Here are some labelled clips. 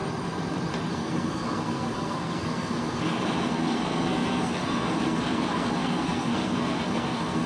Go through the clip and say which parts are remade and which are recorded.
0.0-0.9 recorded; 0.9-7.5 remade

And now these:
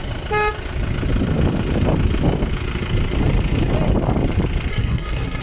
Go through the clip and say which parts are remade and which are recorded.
0.0-4.7 recorded; 4.7-5.4 remade

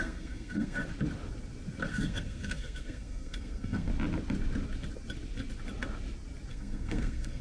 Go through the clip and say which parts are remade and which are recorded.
0.0-0.8 remade; 0.8-1.9 recorded; 1.9-3.9 remade; 3.9-6.5 recorded; 6.5-7.4 remade

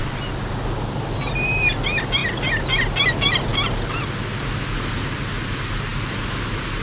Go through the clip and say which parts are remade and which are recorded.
0.0-6.8 recorded

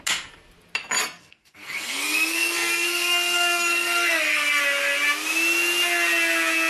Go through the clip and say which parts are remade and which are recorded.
0.0-1.0 recorded; 1.0-4.6 remade; 4.6-6.7 recorded

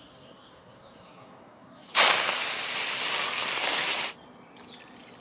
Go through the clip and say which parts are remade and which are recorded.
0.0-1.9 remade; 1.9-5.2 recorded

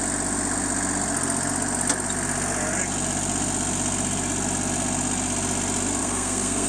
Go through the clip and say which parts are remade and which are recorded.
0.0-6.0 recorded; 6.0-6.7 remade